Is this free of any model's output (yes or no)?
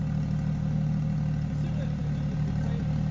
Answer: yes